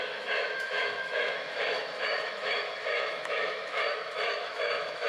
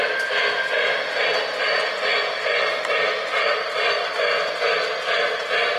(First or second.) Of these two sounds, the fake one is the first